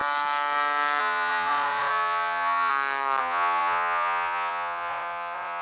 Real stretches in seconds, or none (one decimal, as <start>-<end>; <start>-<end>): 0.0-1.0; 2.7-3.2